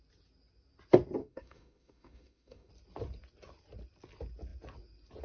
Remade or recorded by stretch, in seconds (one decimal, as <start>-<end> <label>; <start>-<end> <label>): 0.0-1.2 recorded; 1.2-2.7 remade; 2.7-5.2 recorded